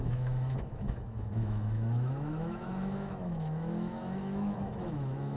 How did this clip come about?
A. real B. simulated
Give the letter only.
B